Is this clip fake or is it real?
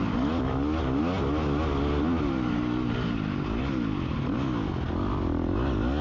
real